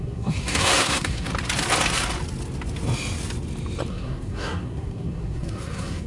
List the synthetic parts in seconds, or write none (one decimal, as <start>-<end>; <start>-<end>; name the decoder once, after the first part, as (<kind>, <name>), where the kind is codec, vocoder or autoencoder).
0.0-1.3 (codec, SNAC); 3.9-6.1

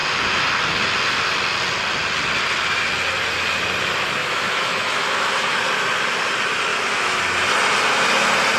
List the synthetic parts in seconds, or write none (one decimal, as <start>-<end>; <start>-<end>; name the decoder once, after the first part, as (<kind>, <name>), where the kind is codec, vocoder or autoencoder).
4.2-5.6 (autoencoder, DAC-VAE); 6.7-7.2

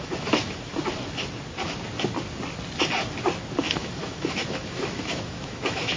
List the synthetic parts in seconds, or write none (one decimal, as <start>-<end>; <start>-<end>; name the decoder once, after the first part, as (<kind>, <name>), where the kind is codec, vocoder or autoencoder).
0.0-0.7 (autoencoder, DAC-VAE); 3.6-6.0

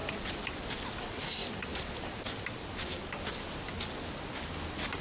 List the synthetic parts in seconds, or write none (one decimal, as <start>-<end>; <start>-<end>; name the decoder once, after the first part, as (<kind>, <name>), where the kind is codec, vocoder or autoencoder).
0.0-0.6 (vocoder, BigVGAN v2); 1.4-3.1

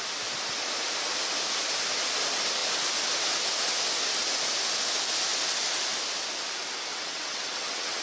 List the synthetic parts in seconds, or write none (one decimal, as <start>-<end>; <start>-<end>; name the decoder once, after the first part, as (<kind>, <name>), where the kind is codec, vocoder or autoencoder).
6.9-8.0 (vocoder, WaveNeXt)

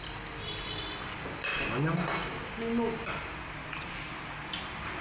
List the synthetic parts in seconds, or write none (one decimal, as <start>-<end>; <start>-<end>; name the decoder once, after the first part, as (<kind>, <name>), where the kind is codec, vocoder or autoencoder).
0.0-1.5 (vocoder, BigVGAN v2); 4.5-5.0

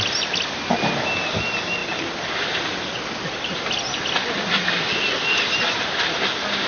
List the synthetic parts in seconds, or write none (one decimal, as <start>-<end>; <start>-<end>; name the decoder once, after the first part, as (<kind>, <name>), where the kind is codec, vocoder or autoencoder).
none

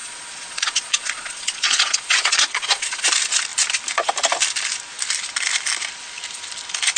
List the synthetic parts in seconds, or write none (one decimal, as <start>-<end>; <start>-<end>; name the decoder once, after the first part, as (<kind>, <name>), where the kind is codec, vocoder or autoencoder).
0.0-3.1 (vocoder, Vocos)